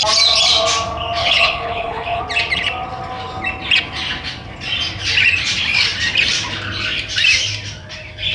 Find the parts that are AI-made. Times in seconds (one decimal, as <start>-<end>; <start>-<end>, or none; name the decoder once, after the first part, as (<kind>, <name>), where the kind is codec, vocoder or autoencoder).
1.2-2.2 (codec, HILCodec)